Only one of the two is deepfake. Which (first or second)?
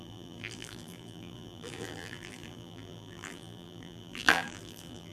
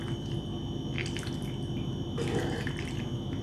first